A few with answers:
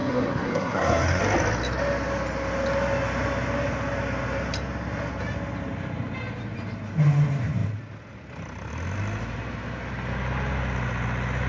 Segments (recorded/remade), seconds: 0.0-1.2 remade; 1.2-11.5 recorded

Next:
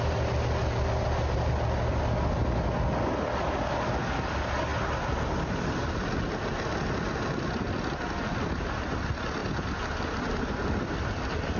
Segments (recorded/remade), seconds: 0.0-11.6 recorded

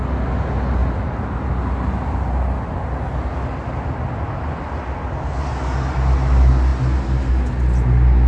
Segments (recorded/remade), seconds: 0.0-8.3 recorded

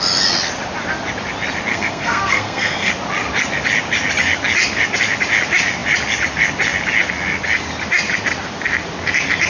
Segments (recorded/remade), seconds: 0.0-1.7 recorded; 1.7-2.9 remade; 2.9-9.5 recorded